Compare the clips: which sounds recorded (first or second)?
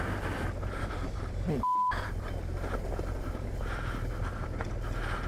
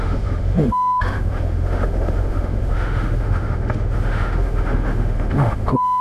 first